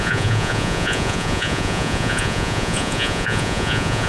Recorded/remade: remade